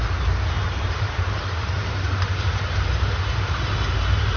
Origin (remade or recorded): remade